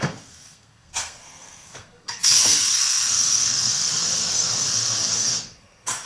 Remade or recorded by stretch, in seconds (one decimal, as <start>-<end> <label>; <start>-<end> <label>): 0.0-6.1 remade